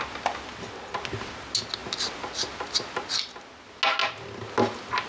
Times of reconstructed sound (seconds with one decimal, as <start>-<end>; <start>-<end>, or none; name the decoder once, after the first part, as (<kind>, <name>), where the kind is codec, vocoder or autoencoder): none